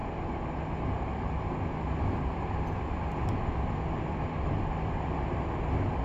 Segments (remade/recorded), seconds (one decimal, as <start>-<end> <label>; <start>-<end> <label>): 0.0-6.0 recorded